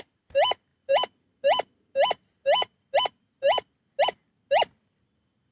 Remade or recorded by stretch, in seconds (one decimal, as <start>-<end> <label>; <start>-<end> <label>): 0.0-5.5 recorded